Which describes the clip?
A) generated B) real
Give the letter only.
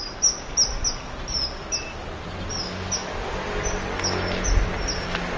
B